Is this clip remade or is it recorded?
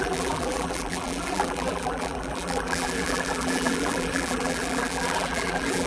remade